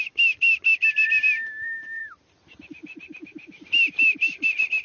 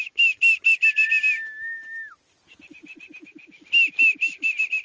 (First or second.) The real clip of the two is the second